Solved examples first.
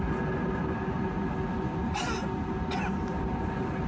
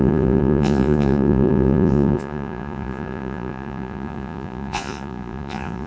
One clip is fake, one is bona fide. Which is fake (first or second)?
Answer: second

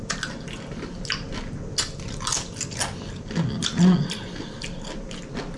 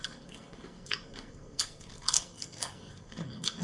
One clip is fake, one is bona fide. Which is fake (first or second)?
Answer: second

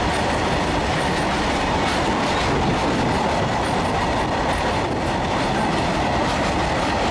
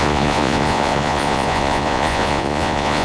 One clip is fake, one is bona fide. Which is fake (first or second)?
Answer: second